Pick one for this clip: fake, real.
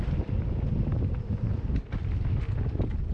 real